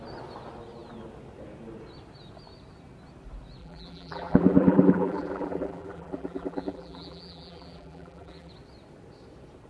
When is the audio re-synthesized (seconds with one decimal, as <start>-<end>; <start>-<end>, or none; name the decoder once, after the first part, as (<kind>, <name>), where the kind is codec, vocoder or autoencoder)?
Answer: 3.6-8.5 (vocoder, BigVGAN v2)